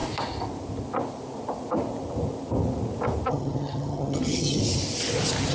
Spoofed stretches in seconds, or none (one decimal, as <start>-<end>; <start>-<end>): 3.3-4.6